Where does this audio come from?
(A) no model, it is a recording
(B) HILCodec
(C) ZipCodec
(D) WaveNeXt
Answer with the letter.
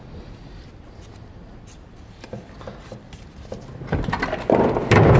A